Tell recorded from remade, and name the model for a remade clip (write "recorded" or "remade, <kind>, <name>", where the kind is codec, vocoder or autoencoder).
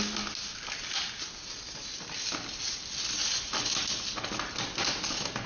recorded